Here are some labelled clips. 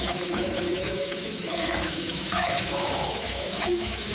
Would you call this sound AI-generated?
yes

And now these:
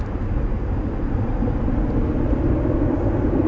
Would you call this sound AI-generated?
no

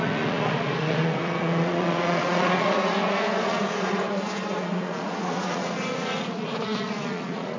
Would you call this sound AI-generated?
yes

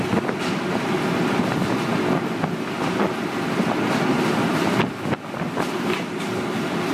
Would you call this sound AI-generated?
no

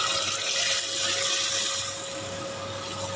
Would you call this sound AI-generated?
no